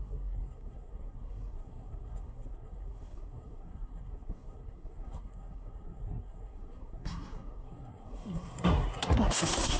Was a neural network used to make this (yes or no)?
yes